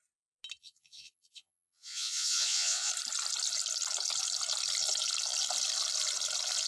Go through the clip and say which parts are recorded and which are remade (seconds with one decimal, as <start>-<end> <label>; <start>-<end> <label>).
0.0-0.6 recorded; 0.6-2.9 remade; 2.9-6.7 recorded